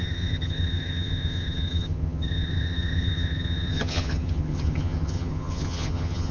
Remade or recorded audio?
remade